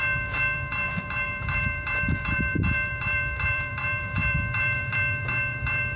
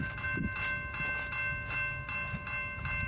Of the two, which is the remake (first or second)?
first